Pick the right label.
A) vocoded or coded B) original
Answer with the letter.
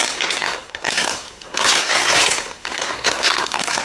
A